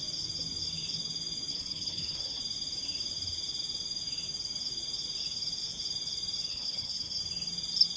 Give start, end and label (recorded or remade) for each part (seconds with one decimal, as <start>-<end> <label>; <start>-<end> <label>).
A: 0.0-1.5 recorded; 1.5-2.4 remade; 2.4-6.5 recorded; 6.5-7.2 remade; 7.2-8.0 recorded